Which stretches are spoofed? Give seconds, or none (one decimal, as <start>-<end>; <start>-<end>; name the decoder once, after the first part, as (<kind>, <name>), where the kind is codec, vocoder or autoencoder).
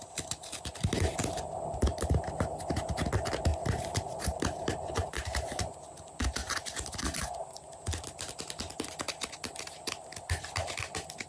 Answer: 1.9-2.9 (vocoder, BigVGAN v2); 3.5-5.8